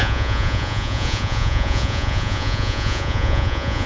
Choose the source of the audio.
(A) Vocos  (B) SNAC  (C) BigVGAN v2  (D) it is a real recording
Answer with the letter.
A